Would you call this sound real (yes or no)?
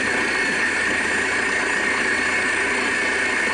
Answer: yes